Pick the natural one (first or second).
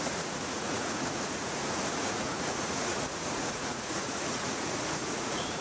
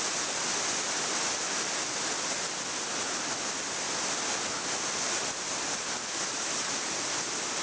second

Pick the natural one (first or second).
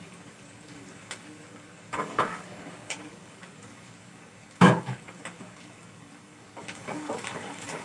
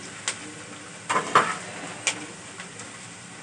second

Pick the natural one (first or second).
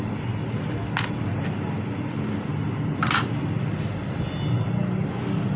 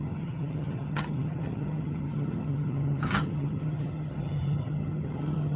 first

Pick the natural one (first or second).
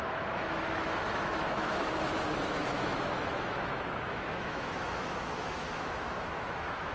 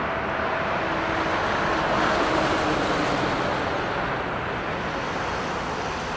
second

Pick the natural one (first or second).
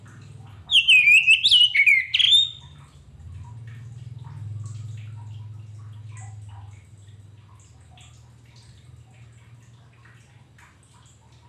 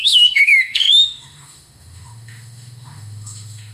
first